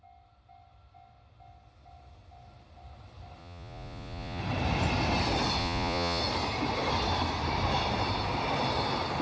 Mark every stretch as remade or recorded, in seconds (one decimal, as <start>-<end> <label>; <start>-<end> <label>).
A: 0.0-3.4 recorded; 3.4-4.4 remade; 4.4-5.6 recorded; 5.6-6.2 remade; 6.2-9.2 recorded